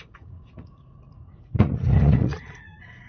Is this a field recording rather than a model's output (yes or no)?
no